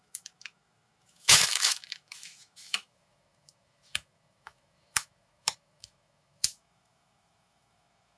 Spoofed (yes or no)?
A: yes